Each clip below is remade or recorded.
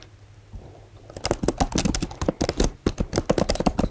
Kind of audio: recorded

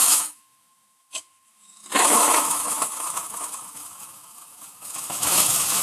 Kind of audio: remade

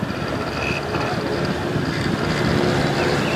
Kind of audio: recorded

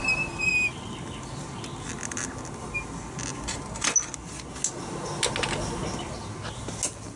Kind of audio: recorded